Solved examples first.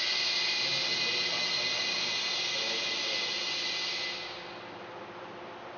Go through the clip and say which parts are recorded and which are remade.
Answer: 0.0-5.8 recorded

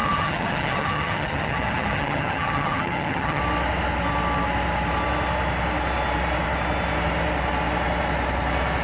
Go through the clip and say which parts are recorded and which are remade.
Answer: 0.0-3.4 remade; 3.4-8.8 recorded

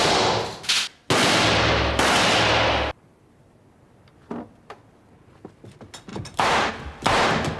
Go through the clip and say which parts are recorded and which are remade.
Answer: 0.0-6.1 recorded; 6.1-6.7 remade; 6.7-7.6 recorded